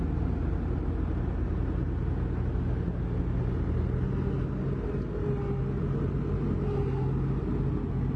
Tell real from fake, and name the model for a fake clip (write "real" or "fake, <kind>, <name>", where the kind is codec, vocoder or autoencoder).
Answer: real